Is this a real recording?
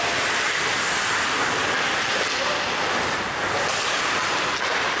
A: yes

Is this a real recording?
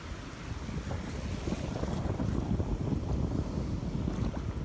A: yes